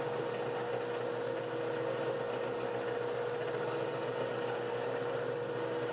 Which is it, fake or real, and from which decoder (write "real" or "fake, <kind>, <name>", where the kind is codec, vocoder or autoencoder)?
real